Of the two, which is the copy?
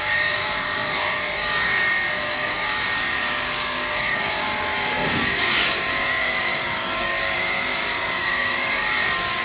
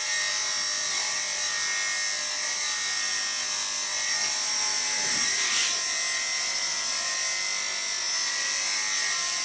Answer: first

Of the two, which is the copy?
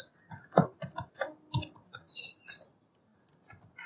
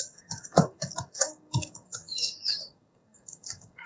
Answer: second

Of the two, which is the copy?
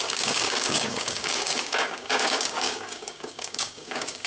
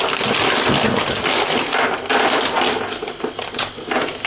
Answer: first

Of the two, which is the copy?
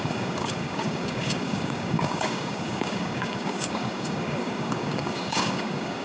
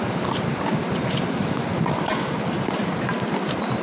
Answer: first